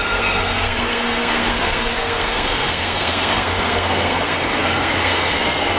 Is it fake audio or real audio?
fake